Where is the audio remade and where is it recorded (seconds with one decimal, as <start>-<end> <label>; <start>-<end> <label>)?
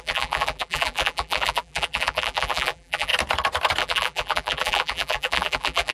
0.0-3.1 remade; 3.1-3.8 recorded; 3.8-5.9 remade